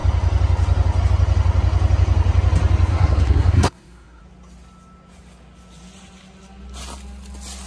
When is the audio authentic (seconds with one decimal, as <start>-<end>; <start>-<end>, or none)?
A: 0.0-2.9; 4.2-7.7